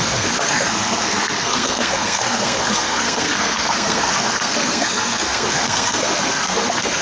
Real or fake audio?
fake